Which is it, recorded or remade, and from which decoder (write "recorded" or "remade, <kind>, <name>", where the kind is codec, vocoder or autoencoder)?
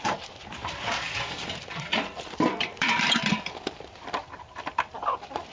remade, vocoder, BigVGAN v2